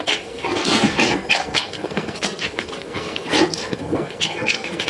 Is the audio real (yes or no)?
no